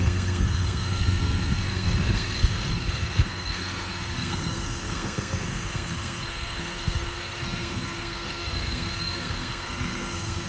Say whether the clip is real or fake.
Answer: fake